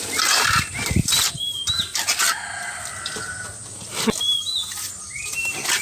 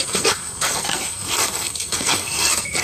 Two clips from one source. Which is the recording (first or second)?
first